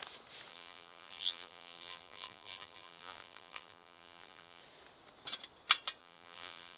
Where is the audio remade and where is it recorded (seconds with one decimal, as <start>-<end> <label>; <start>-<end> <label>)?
0.0-0.5 recorded; 0.5-4.6 remade; 4.6-6.0 recorded; 6.0-6.8 remade